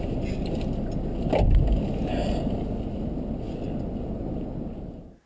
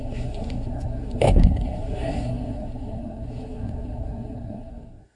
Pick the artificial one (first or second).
second